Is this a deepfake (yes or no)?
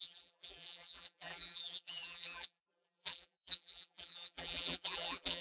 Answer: yes